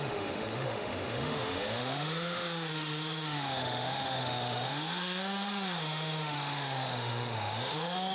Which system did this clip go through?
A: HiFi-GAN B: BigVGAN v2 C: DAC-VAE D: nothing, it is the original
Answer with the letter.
C